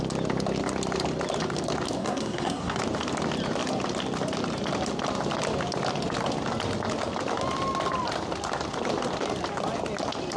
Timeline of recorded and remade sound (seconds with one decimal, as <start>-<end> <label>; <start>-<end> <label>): 0.0-2.0 recorded; 2.0-2.8 remade; 2.8-10.4 recorded